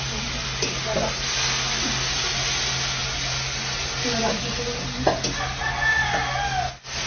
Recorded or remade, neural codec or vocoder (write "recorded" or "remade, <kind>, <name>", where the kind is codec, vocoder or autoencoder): recorded